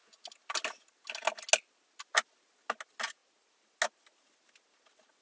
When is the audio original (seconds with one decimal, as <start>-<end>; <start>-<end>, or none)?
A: 0.0-5.2